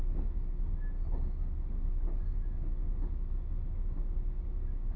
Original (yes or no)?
yes